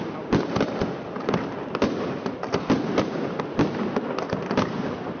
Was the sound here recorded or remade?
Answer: recorded